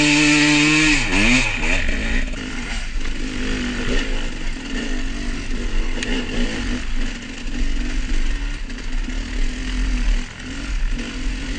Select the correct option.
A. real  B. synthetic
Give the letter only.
A